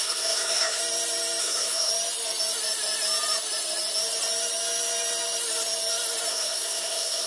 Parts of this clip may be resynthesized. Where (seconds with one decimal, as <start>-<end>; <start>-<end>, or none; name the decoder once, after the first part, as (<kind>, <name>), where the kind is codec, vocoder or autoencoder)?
0.0-0.8 (codec, SNAC); 1.4-1.9; 6.3-7.3